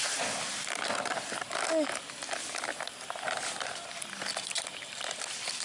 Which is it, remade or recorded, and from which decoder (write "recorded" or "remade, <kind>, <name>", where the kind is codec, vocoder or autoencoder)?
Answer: recorded